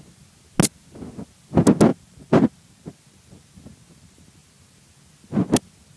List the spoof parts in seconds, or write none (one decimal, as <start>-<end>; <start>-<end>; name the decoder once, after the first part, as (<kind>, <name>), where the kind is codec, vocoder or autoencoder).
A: 1.9-2.9 (vocoder, BigVGAN v2)